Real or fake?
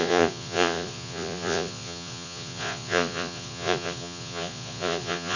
fake